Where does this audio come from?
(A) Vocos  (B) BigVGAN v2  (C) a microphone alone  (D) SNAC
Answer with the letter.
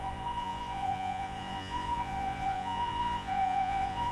A